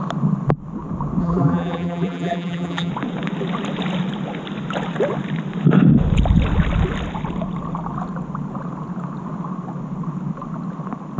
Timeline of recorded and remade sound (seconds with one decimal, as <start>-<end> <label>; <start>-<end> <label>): 0.0-1.2 recorded; 1.2-2.9 remade; 2.9-11.2 recorded

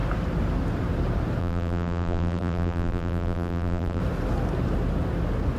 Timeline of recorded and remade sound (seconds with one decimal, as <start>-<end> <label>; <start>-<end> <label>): 0.0-1.4 recorded; 1.4-4.0 remade; 4.0-5.6 recorded

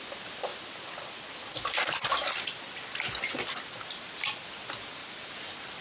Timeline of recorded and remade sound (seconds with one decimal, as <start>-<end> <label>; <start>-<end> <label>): 0.0-5.0 recorded; 5.0-5.8 remade

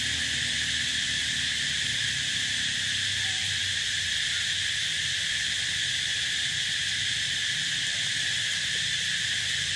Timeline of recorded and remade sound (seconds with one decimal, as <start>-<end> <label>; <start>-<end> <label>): 0.0-1.2 recorded; 1.2-3.6 remade; 3.6-9.8 recorded

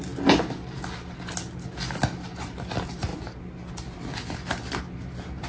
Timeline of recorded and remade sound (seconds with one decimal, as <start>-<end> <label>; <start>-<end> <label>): 0.0-5.5 recorded

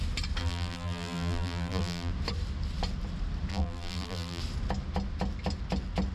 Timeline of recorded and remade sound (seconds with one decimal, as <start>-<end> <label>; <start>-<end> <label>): 0.0-0.4 recorded; 0.4-2.1 remade; 2.1-3.5 recorded; 3.5-4.4 remade; 4.4-6.1 recorded

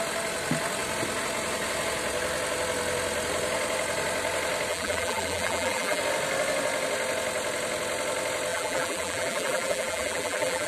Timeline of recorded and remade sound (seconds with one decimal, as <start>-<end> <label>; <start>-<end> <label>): 0.0-4.7 recorded; 4.7-6.0 remade; 6.0-8.5 recorded; 8.5-10.7 remade